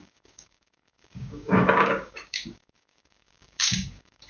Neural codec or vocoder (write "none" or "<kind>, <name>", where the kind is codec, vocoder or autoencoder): codec, DAC